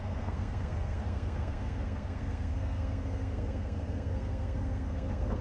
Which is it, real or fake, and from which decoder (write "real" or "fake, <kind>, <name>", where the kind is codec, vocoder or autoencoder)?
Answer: fake, codec, SNAC